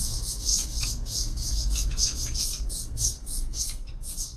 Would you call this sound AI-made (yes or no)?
yes